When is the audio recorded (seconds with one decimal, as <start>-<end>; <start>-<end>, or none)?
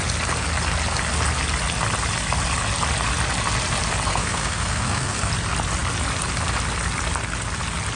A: 0.0-4.1; 5.3-8.0